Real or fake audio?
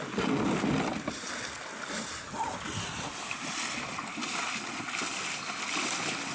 real